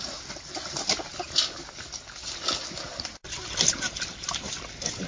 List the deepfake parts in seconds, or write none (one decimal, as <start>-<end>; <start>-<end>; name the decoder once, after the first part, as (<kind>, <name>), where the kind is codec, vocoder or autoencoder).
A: none